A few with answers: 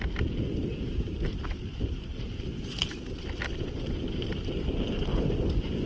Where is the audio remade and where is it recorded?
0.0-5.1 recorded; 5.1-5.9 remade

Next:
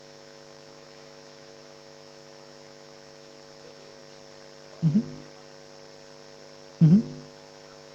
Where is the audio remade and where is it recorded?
0.0-4.0 remade; 4.0-6.7 recorded; 6.7-7.9 remade

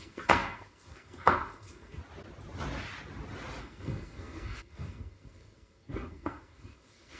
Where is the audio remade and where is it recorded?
0.0-2.0 remade; 2.0-3.6 recorded; 3.6-7.2 remade

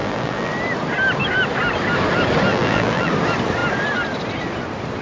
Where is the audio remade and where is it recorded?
0.0-0.5 remade; 0.5-2.5 recorded; 2.5-3.1 remade; 3.1-5.0 recorded

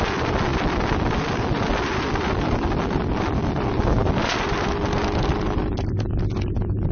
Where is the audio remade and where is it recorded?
0.0-6.9 recorded

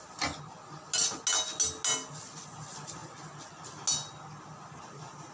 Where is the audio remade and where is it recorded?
0.0-5.3 recorded